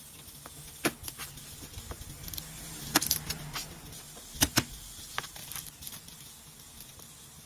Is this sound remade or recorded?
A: recorded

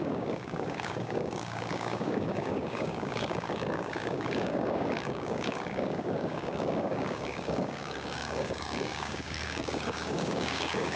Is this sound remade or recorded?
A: remade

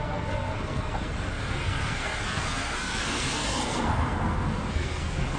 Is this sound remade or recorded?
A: remade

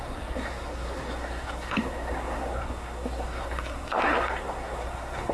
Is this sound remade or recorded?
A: remade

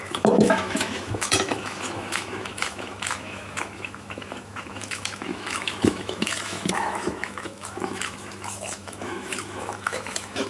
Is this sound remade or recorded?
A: remade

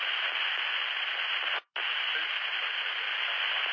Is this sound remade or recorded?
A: recorded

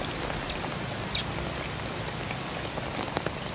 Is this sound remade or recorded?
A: recorded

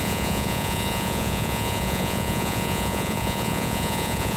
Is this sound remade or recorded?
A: remade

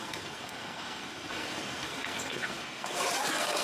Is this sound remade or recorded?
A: remade